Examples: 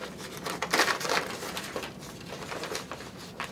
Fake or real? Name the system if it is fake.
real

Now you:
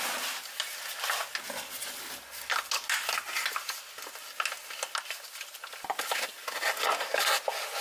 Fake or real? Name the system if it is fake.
real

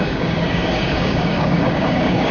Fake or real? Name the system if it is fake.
fake, codec, DAC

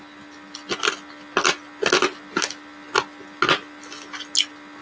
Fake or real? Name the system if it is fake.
real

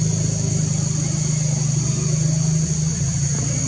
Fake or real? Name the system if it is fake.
real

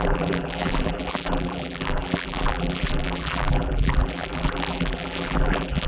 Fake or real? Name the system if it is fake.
fake, vocoder, BigVGAN v2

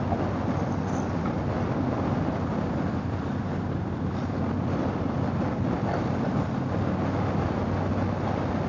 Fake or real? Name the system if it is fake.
real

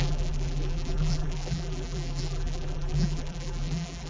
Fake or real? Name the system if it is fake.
fake, vocoder, BigVGAN v2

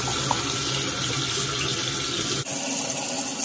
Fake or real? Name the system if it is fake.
real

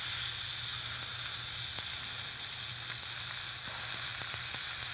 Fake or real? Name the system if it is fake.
real